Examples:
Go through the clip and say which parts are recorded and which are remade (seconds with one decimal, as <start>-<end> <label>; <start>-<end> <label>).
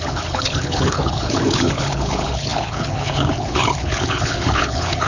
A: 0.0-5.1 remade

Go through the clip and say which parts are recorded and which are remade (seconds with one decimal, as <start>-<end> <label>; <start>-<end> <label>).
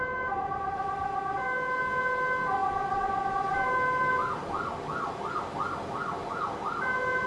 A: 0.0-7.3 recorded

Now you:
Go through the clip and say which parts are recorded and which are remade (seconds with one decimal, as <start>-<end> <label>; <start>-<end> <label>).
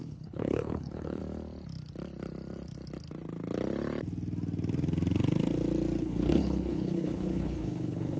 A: 0.0-1.2 remade; 1.2-6.0 recorded; 6.0-8.2 remade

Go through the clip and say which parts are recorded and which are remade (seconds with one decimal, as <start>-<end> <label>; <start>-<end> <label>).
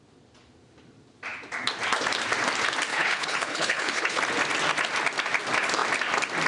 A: 0.0-2.9 recorded; 2.9-4.2 remade; 4.2-6.5 recorded